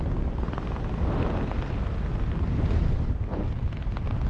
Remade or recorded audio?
recorded